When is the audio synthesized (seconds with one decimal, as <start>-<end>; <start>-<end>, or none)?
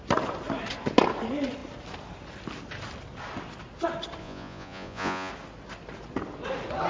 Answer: 4.2-5.3